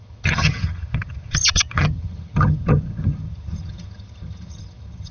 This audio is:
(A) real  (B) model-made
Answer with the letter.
B